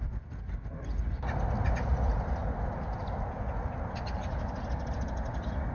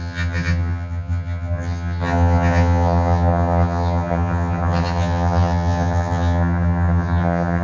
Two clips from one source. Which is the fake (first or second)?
second